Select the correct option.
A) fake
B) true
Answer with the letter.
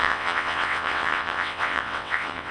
A